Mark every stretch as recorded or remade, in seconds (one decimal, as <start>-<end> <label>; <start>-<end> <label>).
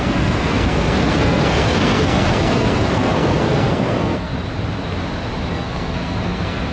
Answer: 0.0-4.3 remade; 4.3-5.5 recorded; 5.5-6.7 remade